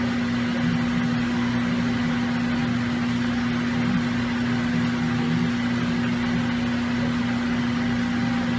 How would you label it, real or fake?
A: real